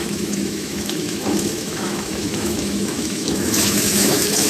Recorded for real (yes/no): no